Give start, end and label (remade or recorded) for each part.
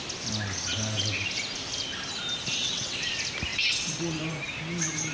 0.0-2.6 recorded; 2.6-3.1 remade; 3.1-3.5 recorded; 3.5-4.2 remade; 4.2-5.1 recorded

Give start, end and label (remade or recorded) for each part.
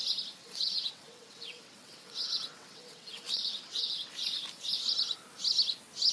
0.0-0.4 recorded; 0.4-4.1 remade; 4.1-6.1 recorded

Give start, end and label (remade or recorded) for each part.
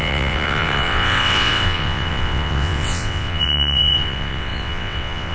0.0-5.3 remade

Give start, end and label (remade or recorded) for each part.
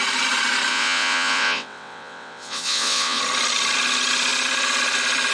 0.0-0.7 recorded; 0.7-3.2 remade; 3.2-5.3 recorded